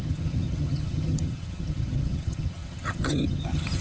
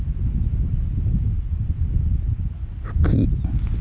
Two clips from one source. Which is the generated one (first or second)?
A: first